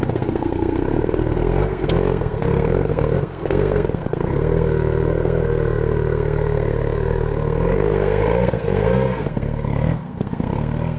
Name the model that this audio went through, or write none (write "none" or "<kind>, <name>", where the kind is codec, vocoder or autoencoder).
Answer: codec, SNAC